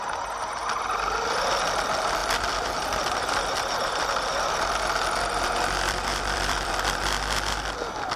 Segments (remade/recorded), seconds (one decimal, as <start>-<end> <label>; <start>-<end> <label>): 0.0-2.2 recorded; 2.2-6.7 remade; 6.7-8.2 recorded

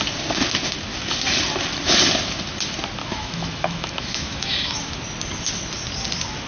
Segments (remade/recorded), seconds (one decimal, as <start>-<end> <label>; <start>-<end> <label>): 0.0-3.0 recorded; 3.0-4.9 remade; 4.9-6.5 recorded

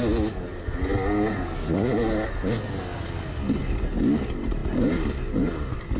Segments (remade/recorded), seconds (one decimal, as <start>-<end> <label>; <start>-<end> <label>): 0.0-6.0 recorded

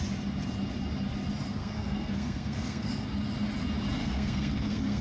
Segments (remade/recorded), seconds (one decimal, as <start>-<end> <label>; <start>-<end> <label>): 0.0-1.6 recorded; 1.6-2.9 remade; 2.9-4.0 recorded; 4.0-5.0 remade